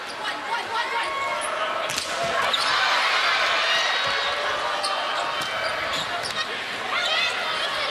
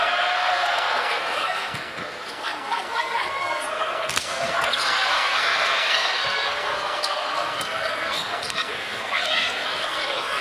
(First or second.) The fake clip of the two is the second